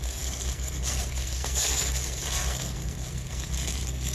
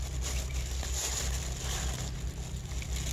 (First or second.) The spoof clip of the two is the first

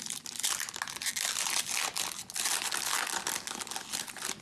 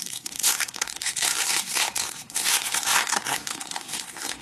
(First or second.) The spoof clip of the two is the second